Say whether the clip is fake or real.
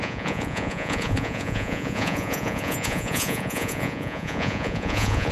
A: fake